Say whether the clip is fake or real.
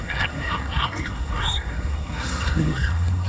fake